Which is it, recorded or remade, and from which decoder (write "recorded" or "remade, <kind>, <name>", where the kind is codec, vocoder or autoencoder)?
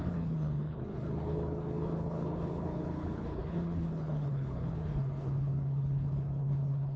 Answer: remade, codec, HILCodec